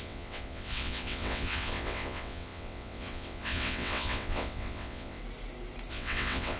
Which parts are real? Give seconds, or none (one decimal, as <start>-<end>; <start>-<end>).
5.2-5.9